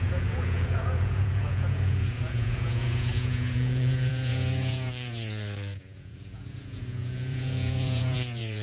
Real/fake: fake